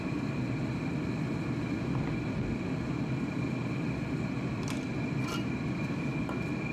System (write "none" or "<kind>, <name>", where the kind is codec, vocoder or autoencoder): none